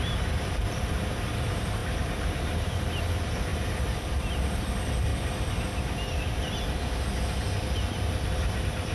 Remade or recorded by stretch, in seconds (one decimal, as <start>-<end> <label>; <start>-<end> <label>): 0.0-5.1 remade; 5.1-8.3 recorded; 8.3-8.9 remade